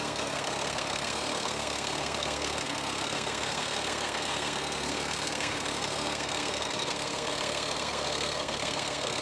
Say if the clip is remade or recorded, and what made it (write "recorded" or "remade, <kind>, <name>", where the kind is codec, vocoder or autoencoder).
remade, codec, SNAC